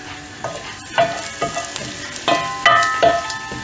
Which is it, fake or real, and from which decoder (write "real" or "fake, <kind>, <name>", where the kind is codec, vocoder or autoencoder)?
real